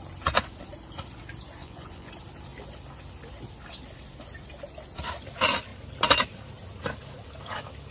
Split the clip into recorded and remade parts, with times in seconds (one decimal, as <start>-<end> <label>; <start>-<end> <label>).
0.0-1.6 recorded; 1.6-2.1 remade; 2.1-7.9 recorded